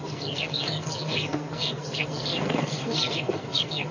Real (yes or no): no